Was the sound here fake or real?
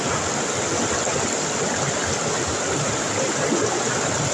real